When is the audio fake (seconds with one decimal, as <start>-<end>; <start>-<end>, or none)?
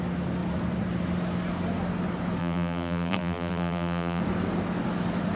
2.4-4.2